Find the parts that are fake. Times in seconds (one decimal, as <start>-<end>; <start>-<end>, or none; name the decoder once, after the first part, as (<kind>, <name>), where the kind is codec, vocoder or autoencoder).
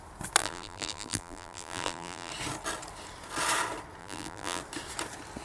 0.4-2.3 (vocoder, BigVGAN v2); 4.0-4.6